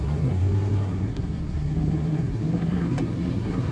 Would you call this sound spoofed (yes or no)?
yes